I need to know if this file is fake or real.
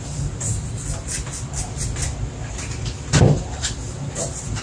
real